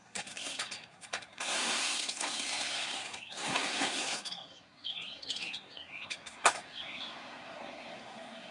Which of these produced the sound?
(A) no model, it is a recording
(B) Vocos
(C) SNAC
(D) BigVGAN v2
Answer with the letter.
C